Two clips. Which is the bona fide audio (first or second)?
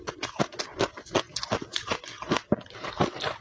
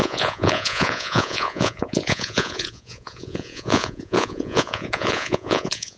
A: first